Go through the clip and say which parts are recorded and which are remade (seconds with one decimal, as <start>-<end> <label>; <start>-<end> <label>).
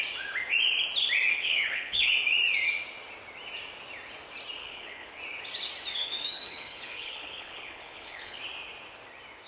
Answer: 0.0-1.3 recorded; 1.3-2.1 remade; 2.1-4.6 recorded; 4.6-5.2 remade; 5.2-5.9 recorded; 5.9-8.4 remade; 8.4-9.5 recorded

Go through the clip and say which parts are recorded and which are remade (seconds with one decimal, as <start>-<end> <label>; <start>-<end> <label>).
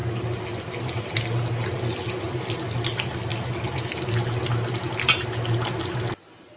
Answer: 0.0-6.6 recorded